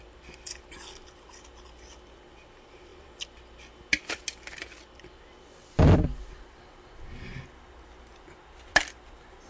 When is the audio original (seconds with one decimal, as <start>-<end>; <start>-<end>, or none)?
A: 0.0-9.5

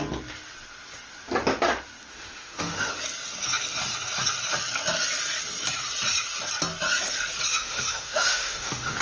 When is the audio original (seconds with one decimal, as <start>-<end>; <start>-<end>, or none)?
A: 0.0-2.1; 2.9-7.5

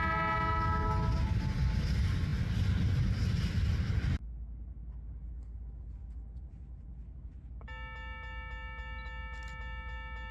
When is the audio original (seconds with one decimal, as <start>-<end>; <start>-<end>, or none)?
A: 0.0-10.3

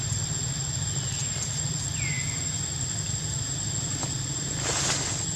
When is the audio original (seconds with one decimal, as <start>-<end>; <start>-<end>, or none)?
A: 0.0-5.4

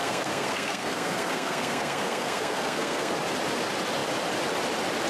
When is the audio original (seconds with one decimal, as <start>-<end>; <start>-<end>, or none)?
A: 3.1-5.1

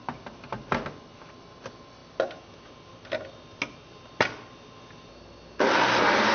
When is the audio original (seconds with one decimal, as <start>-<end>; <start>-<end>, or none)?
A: 0.0-6.3

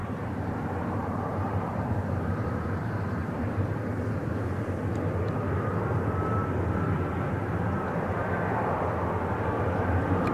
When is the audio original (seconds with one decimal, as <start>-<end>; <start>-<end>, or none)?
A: 3.8-10.3

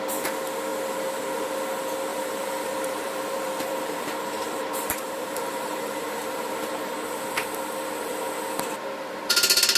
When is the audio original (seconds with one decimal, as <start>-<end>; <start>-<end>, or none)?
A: 0.0-2.1; 6.8-9.8